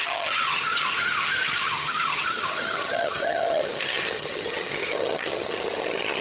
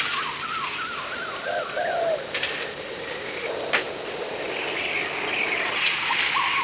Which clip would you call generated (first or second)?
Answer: first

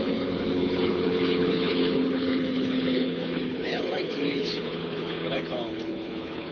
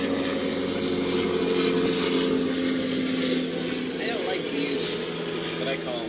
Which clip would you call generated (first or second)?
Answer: first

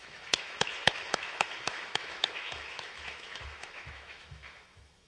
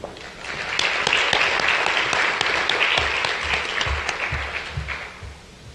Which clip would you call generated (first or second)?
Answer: first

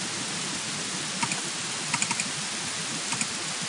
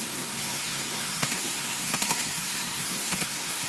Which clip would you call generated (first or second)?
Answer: second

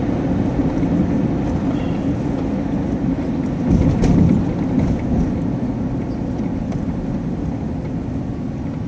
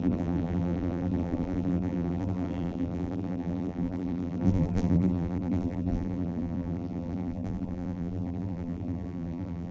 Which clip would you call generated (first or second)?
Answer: second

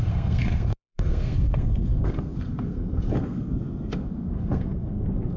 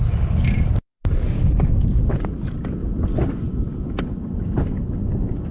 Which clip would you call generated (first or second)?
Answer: first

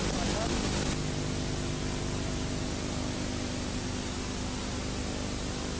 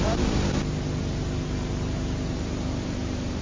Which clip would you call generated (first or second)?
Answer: second